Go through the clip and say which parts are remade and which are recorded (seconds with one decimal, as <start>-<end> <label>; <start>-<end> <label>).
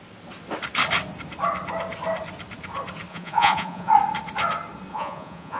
0.0-3.1 recorded; 3.1-3.9 remade; 3.9-4.9 recorded; 4.9-5.6 remade